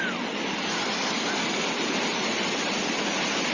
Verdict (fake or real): real